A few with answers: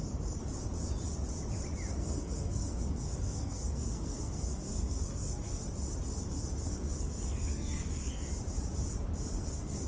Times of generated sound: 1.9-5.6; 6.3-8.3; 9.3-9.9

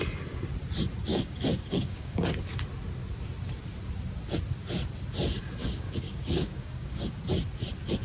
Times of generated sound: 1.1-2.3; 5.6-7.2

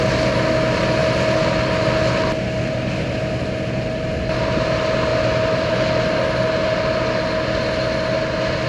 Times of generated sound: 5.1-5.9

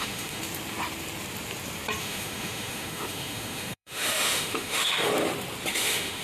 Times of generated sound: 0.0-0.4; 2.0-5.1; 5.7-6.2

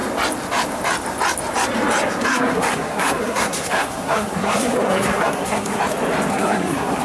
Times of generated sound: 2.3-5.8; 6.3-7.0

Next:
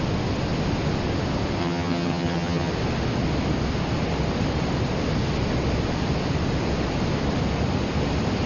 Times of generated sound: 1.6-2.7

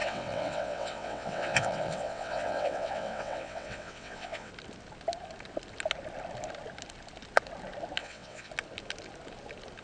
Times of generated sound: 0.0-4.5; 8.0-8.5